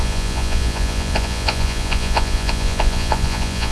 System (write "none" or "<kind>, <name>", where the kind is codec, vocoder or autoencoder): vocoder, Vocos